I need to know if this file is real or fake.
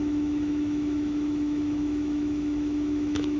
fake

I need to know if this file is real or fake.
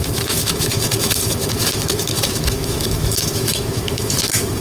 fake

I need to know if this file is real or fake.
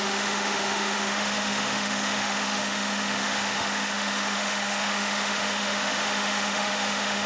fake